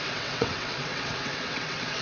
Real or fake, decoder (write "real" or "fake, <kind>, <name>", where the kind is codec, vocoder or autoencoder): fake, vocoder, WaveNeXt